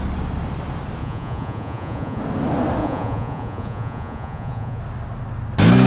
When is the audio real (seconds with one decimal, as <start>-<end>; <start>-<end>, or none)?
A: 0.0-1.0; 2.2-2.8; 4.8-5.9

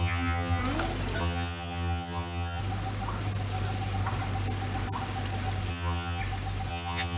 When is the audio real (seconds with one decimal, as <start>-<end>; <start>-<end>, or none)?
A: 0.6-1.2; 2.6-5.7; 6.2-6.7